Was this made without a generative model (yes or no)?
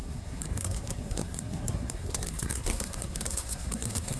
no